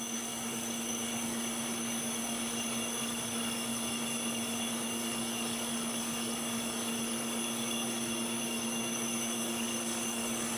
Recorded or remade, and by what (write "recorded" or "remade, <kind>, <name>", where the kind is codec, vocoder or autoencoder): remade, codec, DAC